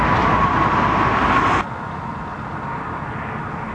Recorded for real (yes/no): yes